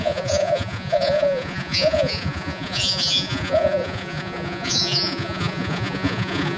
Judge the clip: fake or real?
fake